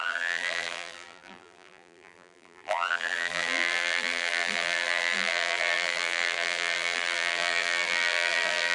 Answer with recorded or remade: remade